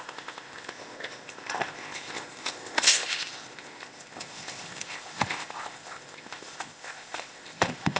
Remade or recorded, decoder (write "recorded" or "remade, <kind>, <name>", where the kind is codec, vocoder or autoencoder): remade, codec, ZipCodec